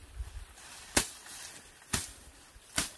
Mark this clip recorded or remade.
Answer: recorded